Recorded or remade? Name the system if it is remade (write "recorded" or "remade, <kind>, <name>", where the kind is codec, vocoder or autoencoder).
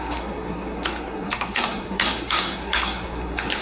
remade, codec, SNAC